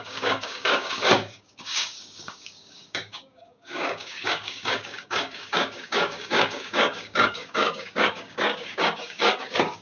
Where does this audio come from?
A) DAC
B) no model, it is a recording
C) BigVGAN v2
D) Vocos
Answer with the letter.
A